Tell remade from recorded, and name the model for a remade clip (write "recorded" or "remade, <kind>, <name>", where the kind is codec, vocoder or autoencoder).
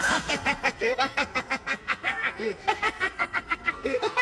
remade, codec, SNAC